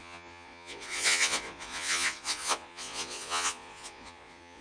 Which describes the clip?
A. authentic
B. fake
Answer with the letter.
B